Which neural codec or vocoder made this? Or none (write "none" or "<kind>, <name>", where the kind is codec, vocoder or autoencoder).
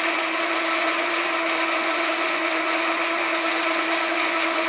vocoder, Vocos